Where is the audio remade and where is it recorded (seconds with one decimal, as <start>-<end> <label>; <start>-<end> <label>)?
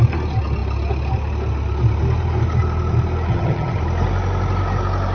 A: 0.0-3.3 recorded; 3.3-3.8 remade; 3.8-5.1 recorded